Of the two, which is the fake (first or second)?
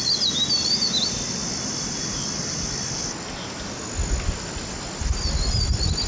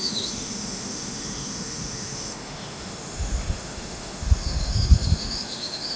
second